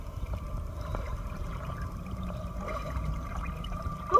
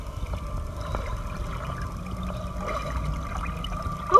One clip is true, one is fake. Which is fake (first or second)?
first